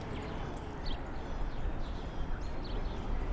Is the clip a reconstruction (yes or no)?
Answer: no